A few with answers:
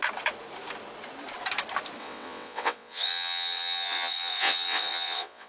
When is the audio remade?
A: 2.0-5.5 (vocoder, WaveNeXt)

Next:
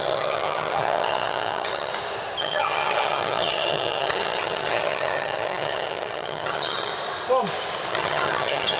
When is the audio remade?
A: 0.0-1.9 (vocoder, HiFi-GAN); 2.4-6.9; 7.9-8.8

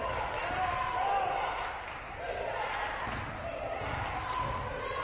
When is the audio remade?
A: none